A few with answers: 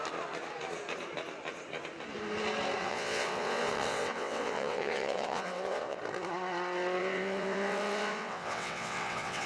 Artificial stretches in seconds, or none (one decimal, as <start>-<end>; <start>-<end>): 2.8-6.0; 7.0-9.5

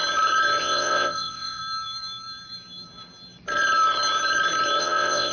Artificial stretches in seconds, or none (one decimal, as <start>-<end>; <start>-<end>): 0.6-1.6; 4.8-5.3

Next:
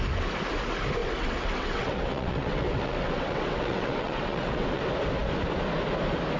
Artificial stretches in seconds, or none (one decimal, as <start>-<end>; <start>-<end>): 1.0-4.8